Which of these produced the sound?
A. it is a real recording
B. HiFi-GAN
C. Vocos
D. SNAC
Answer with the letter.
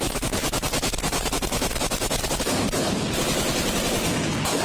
A